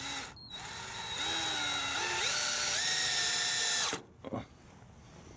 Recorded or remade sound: recorded